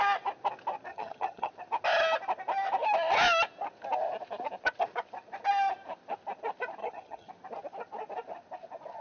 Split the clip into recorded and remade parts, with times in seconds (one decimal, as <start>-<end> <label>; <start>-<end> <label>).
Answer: 0.0-0.9 recorded; 0.9-1.5 remade; 1.5-6.8 recorded; 6.8-7.3 remade; 7.3-9.0 recorded